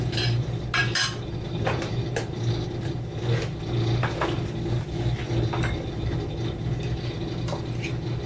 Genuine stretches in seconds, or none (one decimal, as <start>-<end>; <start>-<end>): 0.0-8.3